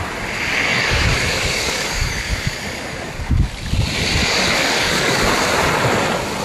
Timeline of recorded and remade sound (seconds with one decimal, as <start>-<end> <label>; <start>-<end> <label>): 0.0-0.7 recorded; 0.7-3.5 remade; 3.5-4.2 recorded; 4.2-5.2 remade; 5.2-6.4 recorded